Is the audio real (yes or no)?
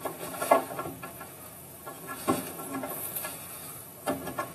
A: no